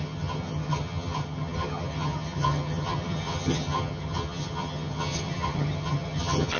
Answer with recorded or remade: remade